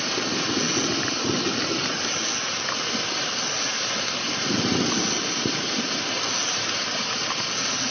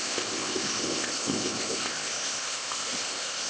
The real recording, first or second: first